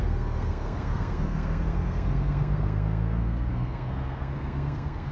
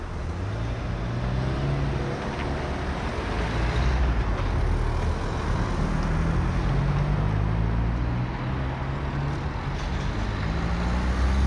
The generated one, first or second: first